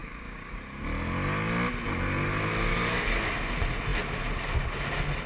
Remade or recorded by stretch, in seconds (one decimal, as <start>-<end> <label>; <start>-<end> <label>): 0.0-0.6 remade; 0.6-2.7 recorded; 2.7-3.3 remade; 3.3-5.3 recorded